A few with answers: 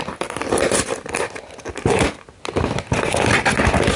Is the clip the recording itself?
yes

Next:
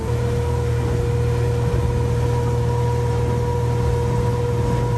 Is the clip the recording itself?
yes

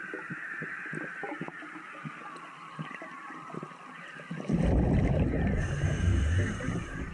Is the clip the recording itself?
yes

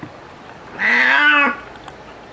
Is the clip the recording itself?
yes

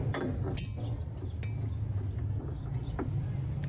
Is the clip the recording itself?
yes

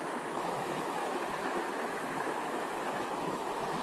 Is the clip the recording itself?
no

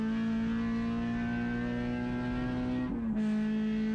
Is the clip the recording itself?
yes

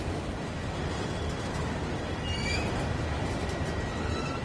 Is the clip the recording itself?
yes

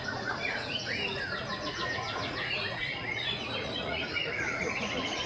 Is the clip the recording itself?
no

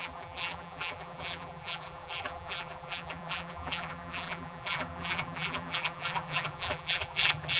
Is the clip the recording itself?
no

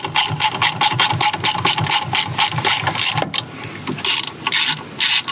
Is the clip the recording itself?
yes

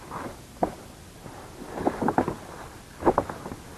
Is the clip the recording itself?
yes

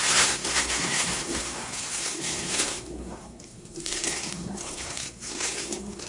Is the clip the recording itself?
no